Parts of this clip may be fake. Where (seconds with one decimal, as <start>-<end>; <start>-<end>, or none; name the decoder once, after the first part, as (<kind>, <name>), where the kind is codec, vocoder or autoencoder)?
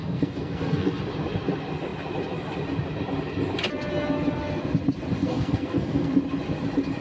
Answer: 0.0-1.0 (codec, SNAC); 5.2-6.2